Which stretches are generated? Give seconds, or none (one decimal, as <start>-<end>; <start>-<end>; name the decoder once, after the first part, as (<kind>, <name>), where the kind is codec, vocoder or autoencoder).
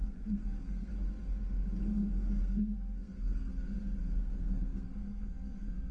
0.0-0.9 (codec, SNAC); 2.4-3.5; 4.0-5.9